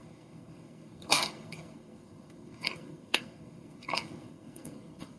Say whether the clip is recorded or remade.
remade